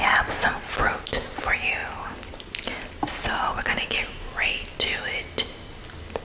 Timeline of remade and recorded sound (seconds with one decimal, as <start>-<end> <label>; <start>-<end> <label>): 0.0-6.2 recorded